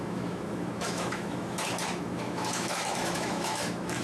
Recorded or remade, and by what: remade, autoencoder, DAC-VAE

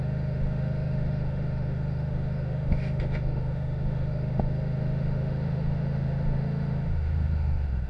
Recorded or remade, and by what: remade, autoencoder, DAC-VAE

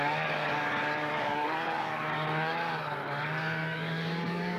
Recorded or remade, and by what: remade, codec, DAC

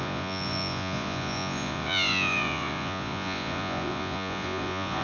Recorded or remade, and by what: remade, vocoder, Vocos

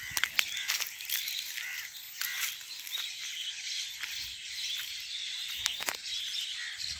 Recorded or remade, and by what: recorded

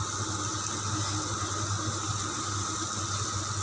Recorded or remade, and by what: recorded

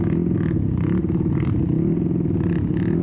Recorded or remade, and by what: recorded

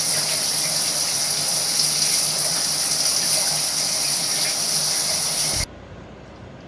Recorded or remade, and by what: recorded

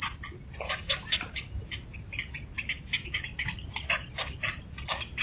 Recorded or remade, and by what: recorded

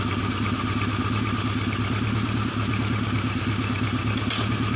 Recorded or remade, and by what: recorded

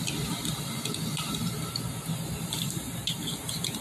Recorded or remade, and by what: recorded